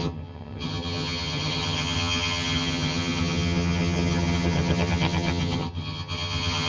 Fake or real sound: fake